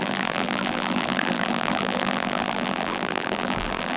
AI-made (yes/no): yes